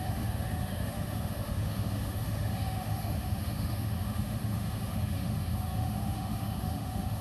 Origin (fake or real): fake